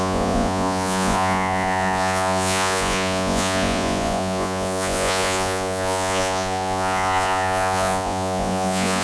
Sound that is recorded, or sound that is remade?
remade